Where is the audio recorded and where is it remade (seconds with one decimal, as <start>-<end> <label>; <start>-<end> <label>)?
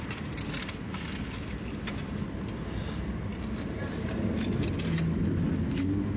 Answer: 0.0-6.2 recorded